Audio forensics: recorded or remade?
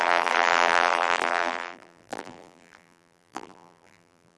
remade